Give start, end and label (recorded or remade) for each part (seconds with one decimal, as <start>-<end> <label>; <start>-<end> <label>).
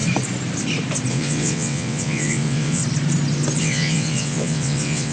0.0-1.1 recorded; 1.1-2.8 remade; 2.8-3.6 recorded; 3.6-5.1 remade